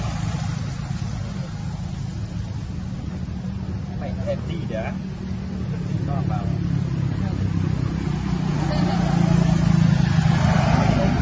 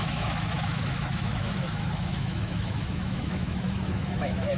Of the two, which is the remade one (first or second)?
second